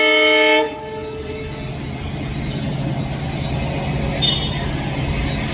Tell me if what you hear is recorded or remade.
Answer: recorded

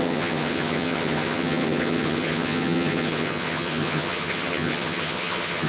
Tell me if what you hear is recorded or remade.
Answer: remade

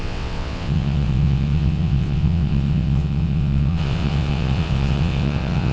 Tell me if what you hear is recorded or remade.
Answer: remade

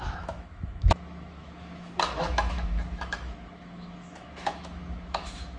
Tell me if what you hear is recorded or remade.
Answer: remade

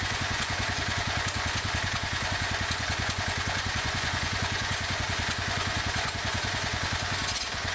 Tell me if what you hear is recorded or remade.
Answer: remade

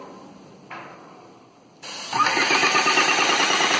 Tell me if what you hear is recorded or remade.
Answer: recorded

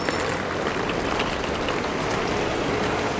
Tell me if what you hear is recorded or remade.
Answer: recorded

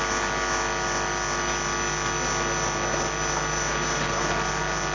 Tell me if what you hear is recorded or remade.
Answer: recorded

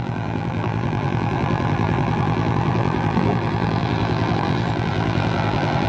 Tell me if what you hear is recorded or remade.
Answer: remade